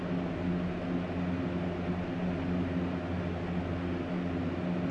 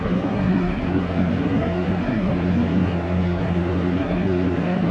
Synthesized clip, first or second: second